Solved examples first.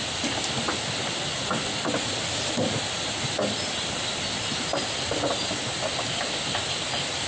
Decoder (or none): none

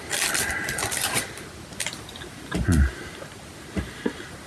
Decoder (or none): none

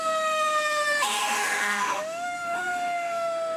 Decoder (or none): autoencoder, DAC-VAE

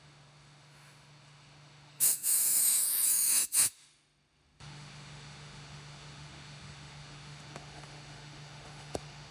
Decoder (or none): autoencoder, DAC-VAE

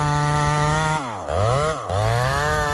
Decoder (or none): autoencoder, DAC-VAE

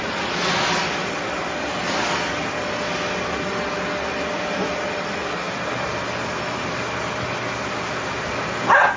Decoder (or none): none